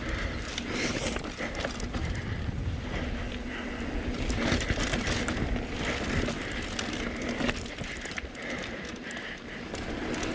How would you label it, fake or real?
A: real